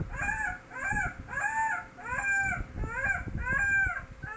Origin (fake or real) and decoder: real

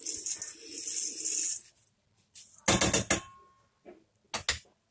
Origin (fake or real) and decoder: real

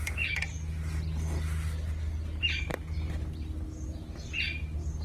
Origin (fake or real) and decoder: real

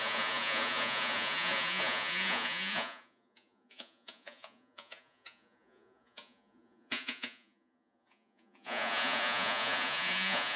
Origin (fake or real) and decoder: fake, vocoder, Vocos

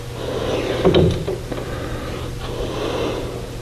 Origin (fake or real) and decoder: real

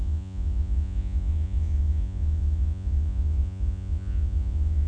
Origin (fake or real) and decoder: fake, vocoder, Vocos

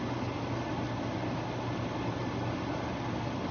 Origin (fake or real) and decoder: real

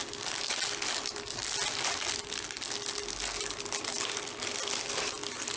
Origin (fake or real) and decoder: real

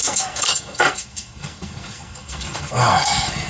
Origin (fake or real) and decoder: fake, codec, SNAC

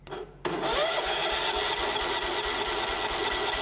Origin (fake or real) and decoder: real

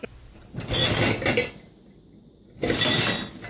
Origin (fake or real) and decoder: real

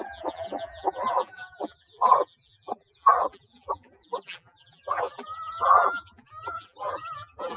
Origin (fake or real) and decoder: fake, vocoder, BigVGAN v2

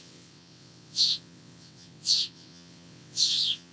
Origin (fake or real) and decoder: fake, vocoder, WaveNeXt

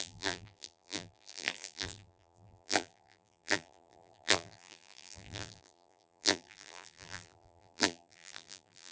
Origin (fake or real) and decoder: fake, vocoder, BigVGAN v2